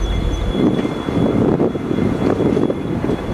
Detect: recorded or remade recorded